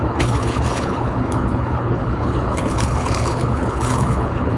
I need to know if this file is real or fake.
fake